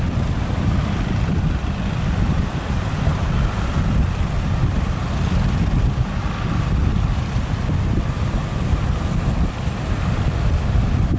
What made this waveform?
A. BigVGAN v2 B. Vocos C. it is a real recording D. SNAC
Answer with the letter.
C